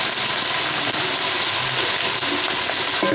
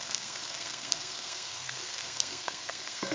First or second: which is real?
first